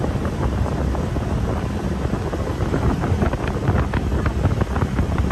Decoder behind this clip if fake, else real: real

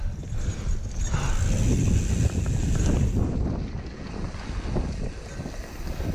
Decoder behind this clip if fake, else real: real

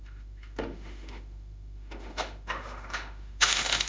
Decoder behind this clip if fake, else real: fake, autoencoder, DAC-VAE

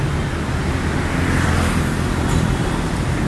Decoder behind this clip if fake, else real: real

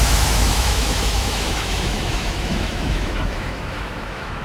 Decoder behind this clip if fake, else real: fake, autoencoder, DAC-VAE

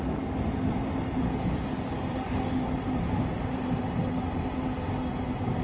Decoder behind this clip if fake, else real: real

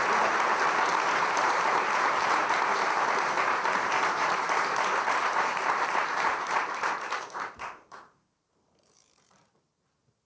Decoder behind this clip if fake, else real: fake, vocoder, BigVGAN v2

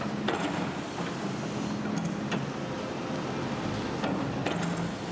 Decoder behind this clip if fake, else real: real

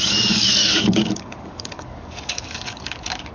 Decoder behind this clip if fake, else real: fake, codec, DAC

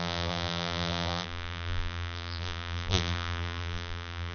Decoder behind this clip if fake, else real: fake, vocoder, BigVGAN v2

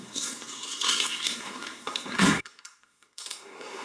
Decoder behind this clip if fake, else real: fake, codec, SNAC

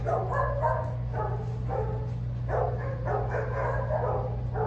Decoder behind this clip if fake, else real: real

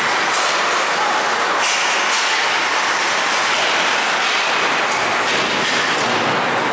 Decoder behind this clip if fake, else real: real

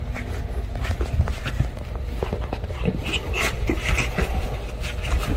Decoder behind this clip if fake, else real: real